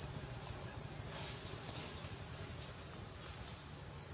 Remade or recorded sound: recorded